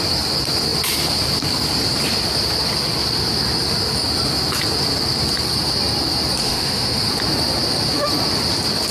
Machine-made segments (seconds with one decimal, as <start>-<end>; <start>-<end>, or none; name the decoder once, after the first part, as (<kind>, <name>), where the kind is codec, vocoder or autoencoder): 6.4-7.1 (autoencoder, DAC-VAE)